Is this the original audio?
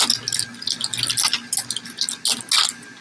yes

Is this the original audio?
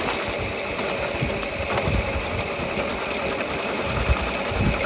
yes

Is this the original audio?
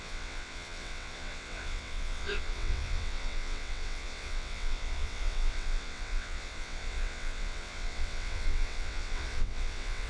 no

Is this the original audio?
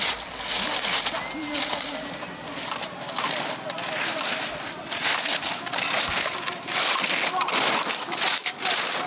yes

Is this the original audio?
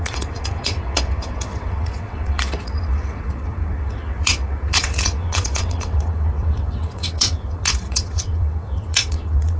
no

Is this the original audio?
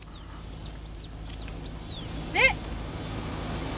yes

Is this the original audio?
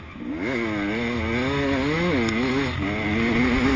yes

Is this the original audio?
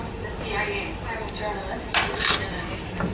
yes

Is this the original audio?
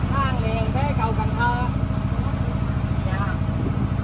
yes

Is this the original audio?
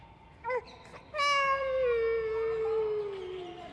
yes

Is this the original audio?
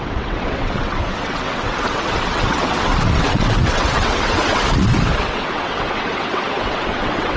no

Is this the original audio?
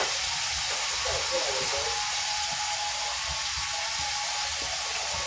yes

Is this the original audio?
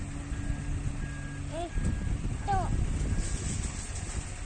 yes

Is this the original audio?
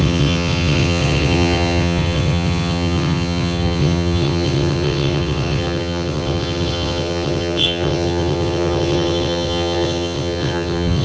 no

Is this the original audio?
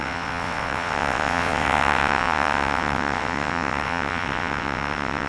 no